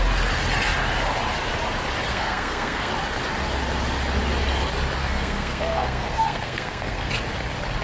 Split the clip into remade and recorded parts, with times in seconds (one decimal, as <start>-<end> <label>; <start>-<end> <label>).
0.0-2.1 recorded; 2.1-2.9 remade; 2.9-5.0 recorded; 5.0-7.1 remade; 7.1-7.8 recorded

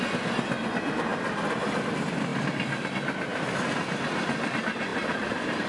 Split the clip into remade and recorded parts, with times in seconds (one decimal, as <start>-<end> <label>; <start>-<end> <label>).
0.0-2.3 recorded; 2.3-2.9 remade; 2.9-3.3 recorded; 3.3-4.5 remade; 4.5-4.9 recorded; 4.9-5.7 remade

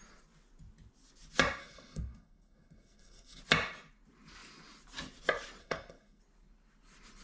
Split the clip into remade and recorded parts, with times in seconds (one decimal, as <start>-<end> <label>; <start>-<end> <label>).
0.0-1.6 recorded; 1.6-3.4 remade; 3.4-5.6 recorded; 5.6-6.2 remade; 6.2-7.2 recorded

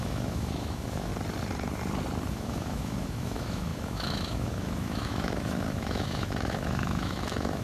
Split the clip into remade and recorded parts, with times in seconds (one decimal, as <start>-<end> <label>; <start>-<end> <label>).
0.0-1.1 remade; 1.1-2.3 recorded; 2.3-7.6 remade

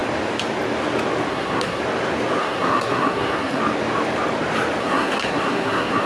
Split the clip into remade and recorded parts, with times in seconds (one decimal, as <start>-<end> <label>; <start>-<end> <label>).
0.0-1.3 recorded; 1.3-1.8 remade; 1.8-2.4 recorded; 2.4-3.6 remade; 3.6-4.8 recorded; 4.8-6.1 remade

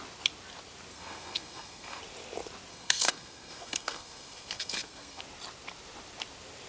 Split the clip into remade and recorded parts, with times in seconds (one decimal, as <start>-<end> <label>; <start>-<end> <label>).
0.0-0.9 recorded; 0.9-2.0 remade; 2.0-2.7 recorded; 2.7-5.2 remade; 5.2-6.7 recorded